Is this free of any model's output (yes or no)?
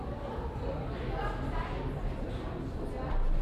yes